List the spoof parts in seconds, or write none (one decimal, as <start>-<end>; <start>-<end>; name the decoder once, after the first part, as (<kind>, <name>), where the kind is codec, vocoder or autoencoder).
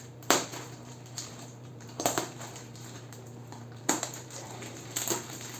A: 0.0-5.6 (vocoder, BigVGAN v2)